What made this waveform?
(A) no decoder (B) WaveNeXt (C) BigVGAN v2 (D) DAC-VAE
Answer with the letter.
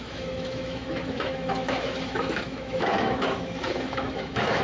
D